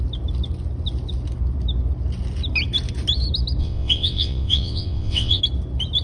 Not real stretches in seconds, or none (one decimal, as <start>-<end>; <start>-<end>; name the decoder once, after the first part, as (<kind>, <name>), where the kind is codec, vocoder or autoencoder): 3.6-5.4 (vocoder, WaveNeXt)